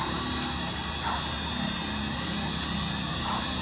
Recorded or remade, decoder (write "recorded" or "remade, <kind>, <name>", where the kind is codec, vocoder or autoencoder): recorded